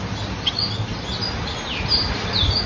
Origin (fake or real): real